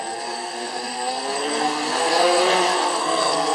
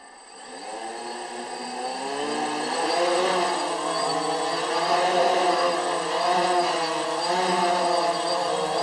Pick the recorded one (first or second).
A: second